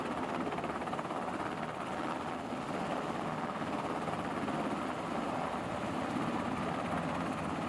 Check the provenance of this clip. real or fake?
real